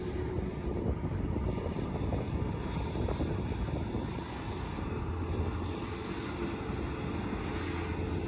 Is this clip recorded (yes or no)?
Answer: yes